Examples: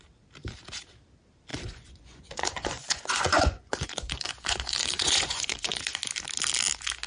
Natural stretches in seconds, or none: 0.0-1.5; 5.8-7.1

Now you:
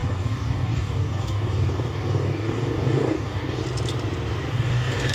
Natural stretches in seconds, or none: 3.6-4.5

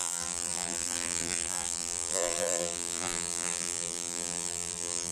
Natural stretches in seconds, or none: none

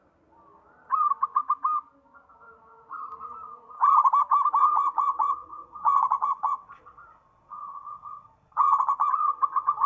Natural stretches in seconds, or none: 0.0-4.6

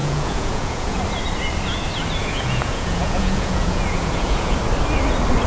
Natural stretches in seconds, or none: 1.0-2.2; 4.6-5.5

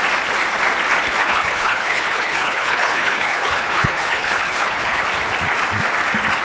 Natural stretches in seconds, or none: 0.0-1.2; 5.0-6.4

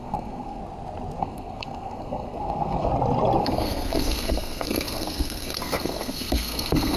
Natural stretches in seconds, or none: 0.6-1.2; 2.9-3.4

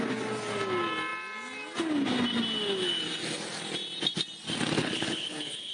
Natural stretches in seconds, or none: 0.0-4.8